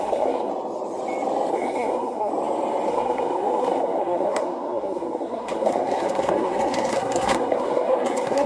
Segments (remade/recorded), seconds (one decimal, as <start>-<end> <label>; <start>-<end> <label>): 0.0-0.5 remade; 0.5-1.5 recorded; 1.5-2.3 remade; 2.3-2.9 recorded; 2.9-8.5 remade

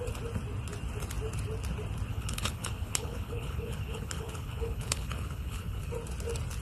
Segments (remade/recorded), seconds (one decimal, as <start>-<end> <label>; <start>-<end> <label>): 0.0-2.1 recorded; 2.1-5.9 remade; 5.9-6.6 recorded

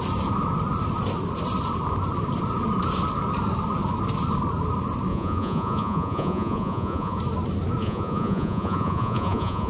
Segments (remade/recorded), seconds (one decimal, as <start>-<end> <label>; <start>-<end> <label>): 0.0-5.1 recorded; 5.1-7.2 remade; 7.2-7.8 recorded; 7.8-9.7 remade

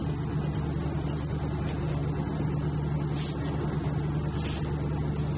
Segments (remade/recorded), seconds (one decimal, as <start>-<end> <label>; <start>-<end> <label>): 0.0-5.4 recorded

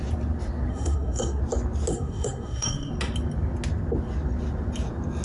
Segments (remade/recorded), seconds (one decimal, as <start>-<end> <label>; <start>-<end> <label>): 0.0-0.7 recorded; 0.7-1.4 remade; 1.4-1.9 recorded; 1.9-2.9 remade; 2.9-5.2 recorded